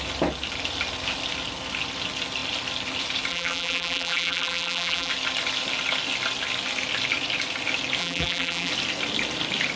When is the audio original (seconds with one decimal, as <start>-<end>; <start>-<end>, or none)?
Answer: 0.0-3.3; 5.1-8.0; 8.7-9.8